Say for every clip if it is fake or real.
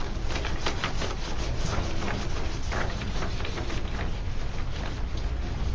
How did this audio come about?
real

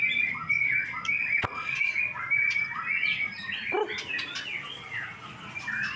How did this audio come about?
real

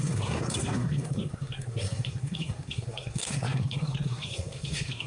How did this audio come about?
fake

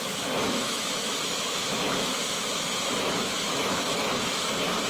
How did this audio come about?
fake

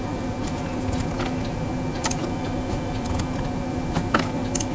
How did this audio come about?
real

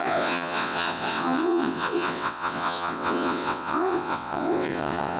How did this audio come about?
fake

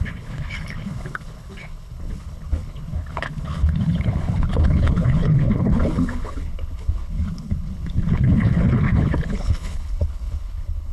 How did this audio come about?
fake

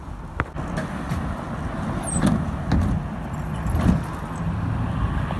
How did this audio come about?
real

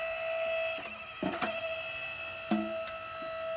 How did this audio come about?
real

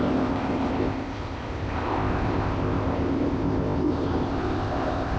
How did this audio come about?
fake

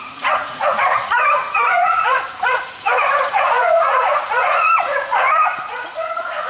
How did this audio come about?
fake